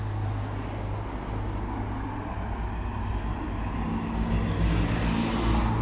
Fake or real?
real